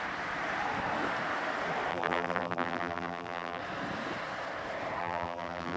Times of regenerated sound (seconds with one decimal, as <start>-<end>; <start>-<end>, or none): 1.9-3.6; 5.0-5.8